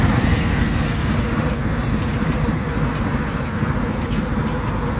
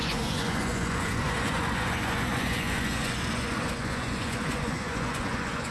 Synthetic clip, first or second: second